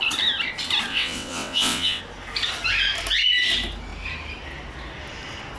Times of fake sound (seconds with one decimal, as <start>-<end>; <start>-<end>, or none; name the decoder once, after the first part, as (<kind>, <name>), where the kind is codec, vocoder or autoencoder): 0.9-2.0 (vocoder, WaveNeXt)